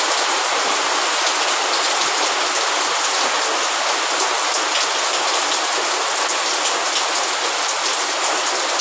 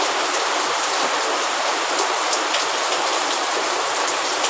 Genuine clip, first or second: first